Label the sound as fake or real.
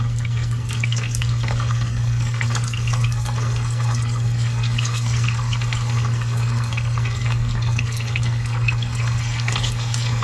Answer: fake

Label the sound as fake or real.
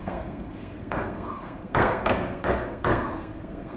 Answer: fake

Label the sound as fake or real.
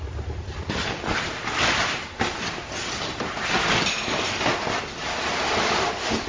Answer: real